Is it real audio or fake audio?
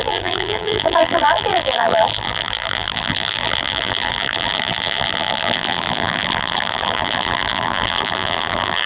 fake